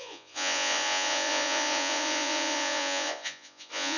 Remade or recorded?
remade